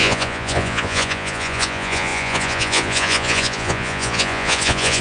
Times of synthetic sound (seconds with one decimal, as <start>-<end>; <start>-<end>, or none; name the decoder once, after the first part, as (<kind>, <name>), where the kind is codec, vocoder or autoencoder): 0.0-5.0 (vocoder, Vocos)

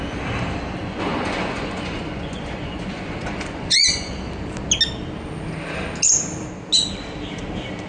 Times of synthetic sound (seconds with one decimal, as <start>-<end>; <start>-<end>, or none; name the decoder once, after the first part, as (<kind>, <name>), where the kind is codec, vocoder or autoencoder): 0.8-4.1 (vocoder, Vocos)

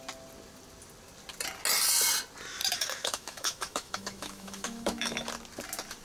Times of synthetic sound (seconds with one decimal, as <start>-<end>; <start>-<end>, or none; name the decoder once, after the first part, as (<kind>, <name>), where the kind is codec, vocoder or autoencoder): 2.6-5.3 (autoencoder, DAC-VAE)

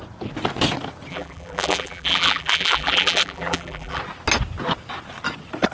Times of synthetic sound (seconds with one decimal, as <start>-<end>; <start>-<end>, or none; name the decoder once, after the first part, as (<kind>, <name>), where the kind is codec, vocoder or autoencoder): 1.1-4.0 (vocoder, BigVGAN v2)

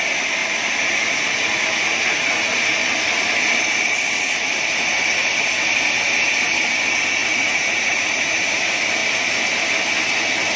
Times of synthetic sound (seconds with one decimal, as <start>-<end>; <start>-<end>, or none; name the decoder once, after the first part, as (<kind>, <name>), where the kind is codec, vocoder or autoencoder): 0.4-2.8 (vocoder, Vocos); 5.1-5.7; 7.2-8.6

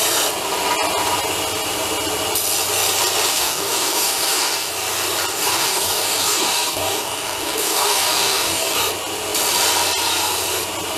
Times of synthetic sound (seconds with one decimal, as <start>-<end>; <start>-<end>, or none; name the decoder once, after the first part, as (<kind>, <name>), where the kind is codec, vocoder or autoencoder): 3.3-4.7 (codec, DAC); 5.3-8.8

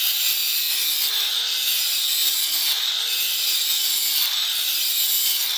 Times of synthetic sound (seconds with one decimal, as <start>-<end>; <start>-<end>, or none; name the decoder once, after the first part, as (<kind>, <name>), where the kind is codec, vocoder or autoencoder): none

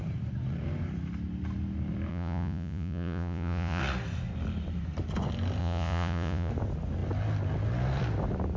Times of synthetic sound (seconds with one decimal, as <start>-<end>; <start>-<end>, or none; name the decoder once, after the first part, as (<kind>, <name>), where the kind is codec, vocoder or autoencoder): 2.1-3.8 (vocoder, Vocos); 5.6-6.5